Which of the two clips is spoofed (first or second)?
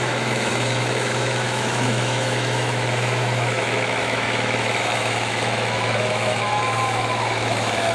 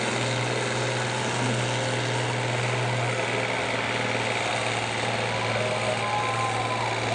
first